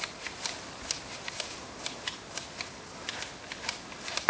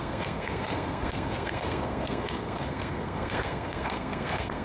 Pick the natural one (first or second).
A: first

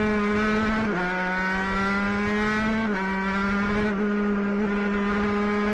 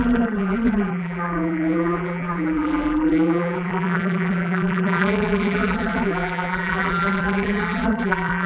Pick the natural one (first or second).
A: first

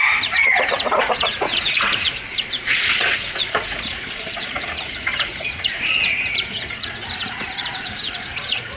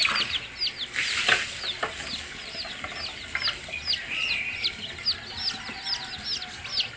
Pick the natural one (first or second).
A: second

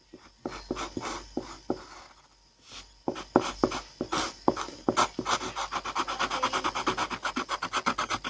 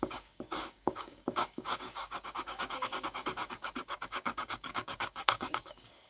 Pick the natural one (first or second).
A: first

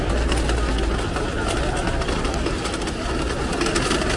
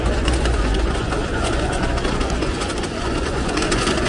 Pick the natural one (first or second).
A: first